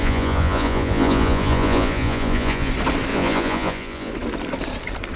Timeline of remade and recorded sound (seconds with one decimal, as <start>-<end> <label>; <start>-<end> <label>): 0.0-2.7 remade; 2.7-3.1 recorded; 3.1-4.1 remade; 4.1-5.2 recorded